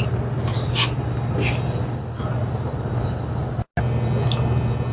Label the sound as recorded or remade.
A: recorded